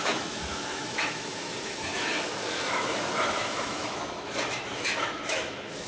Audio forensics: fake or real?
fake